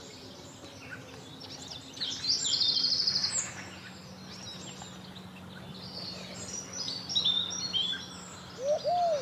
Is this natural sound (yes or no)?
yes